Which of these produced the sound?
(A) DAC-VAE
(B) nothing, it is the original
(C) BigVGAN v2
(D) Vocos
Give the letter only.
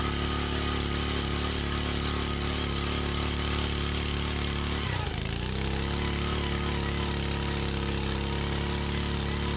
B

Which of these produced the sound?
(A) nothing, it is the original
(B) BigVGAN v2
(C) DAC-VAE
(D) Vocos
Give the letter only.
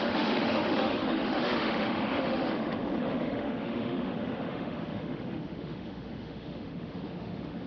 C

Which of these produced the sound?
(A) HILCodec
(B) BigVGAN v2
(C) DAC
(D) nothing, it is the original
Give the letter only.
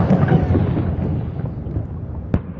D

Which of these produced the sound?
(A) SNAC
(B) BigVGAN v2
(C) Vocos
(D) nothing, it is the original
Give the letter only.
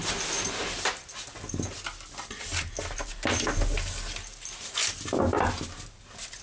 D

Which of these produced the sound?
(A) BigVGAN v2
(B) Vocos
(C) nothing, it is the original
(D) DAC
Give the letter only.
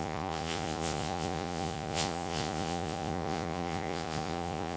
B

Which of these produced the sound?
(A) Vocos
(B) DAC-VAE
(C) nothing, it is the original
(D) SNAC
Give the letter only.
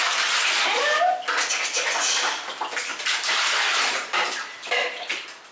C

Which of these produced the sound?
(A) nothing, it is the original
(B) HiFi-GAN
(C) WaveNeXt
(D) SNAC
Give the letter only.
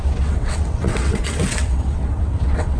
C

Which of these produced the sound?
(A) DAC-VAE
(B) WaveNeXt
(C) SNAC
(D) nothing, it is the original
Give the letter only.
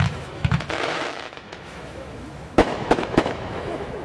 A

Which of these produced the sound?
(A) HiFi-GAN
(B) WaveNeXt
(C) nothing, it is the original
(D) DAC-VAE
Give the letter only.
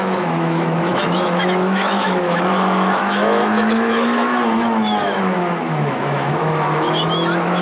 D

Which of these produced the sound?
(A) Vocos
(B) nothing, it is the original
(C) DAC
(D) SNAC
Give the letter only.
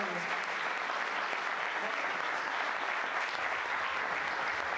B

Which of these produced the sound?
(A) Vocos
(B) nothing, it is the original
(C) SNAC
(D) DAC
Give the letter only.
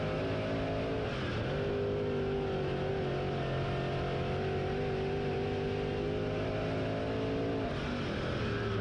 B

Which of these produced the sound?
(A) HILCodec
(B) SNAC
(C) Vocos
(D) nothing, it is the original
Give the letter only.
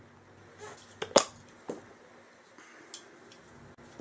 D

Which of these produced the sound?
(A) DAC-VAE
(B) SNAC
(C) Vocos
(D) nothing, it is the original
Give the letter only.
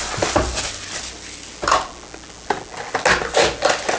D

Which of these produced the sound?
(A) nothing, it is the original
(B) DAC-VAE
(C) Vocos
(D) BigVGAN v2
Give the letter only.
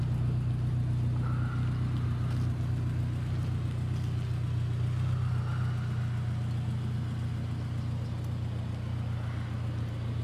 A